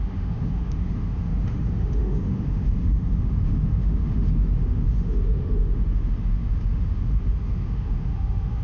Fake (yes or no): yes